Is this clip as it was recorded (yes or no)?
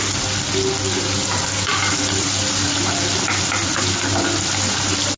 yes